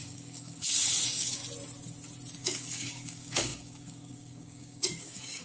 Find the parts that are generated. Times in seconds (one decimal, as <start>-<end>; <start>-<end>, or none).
0.0-1.4; 2.4-5.4